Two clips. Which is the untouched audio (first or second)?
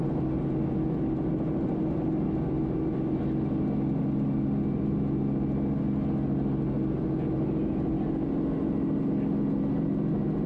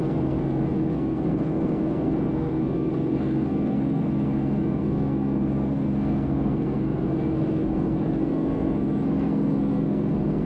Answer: first